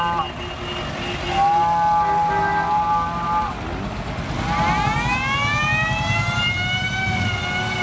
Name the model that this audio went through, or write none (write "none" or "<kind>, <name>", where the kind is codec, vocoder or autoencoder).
none